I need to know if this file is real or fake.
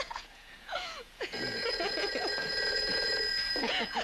fake